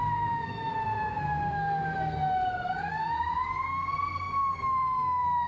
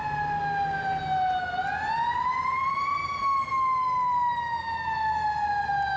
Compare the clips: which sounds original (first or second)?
second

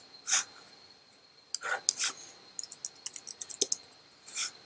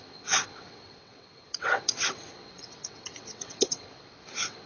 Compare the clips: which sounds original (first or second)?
first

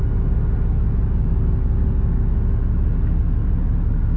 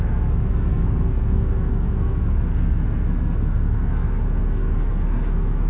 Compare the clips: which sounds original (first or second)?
first